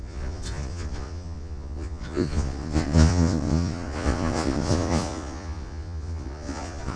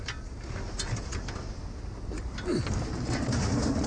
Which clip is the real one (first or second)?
second